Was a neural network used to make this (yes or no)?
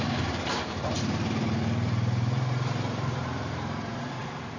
yes